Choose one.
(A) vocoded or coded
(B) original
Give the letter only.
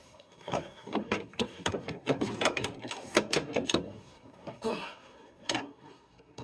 A